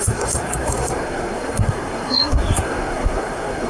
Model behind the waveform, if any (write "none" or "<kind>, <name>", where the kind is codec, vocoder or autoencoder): codec, SNAC